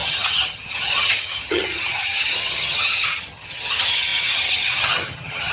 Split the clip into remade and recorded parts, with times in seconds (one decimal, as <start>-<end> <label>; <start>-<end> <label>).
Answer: 0.0-5.5 remade